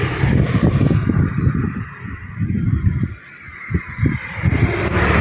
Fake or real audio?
fake